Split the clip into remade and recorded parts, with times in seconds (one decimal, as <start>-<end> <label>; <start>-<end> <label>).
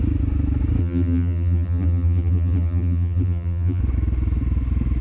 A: 0.0-0.8 recorded; 0.8-3.8 remade; 3.8-5.0 recorded